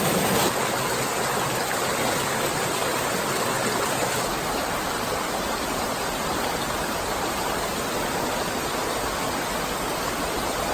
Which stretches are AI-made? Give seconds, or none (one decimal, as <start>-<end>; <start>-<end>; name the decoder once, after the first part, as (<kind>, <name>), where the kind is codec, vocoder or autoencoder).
none